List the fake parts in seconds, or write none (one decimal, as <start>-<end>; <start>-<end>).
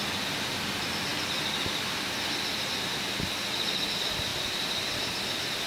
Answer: 1.1-2.7; 4.3-5.7